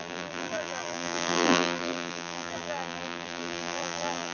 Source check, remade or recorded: remade